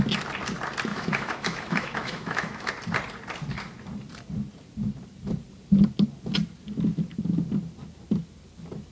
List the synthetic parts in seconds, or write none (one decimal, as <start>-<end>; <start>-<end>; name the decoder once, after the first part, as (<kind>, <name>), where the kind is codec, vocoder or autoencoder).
0.9-2.7 (autoencoder, DAC-VAE)